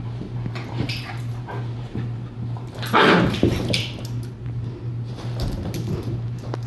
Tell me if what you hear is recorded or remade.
recorded